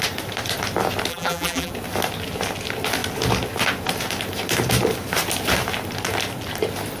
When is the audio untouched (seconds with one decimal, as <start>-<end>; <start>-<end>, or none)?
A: 0.0-1.1; 1.7-7.0